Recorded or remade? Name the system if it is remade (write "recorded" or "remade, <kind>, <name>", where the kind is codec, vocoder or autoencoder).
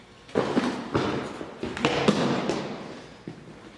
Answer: recorded